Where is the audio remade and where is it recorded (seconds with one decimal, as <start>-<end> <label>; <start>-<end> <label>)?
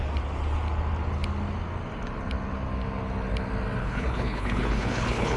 0.0-3.8 recorded; 3.8-5.4 remade